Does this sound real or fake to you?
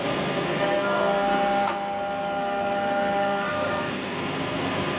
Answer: fake